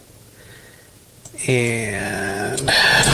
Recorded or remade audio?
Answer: remade